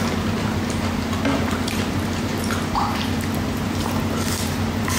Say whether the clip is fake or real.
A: fake